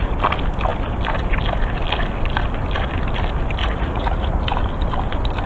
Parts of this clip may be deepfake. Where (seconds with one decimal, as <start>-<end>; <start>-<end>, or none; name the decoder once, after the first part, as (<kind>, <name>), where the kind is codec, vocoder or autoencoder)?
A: 3.6-4.3 (vocoder, Vocos)